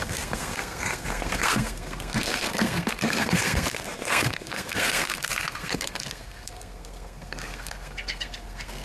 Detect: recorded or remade remade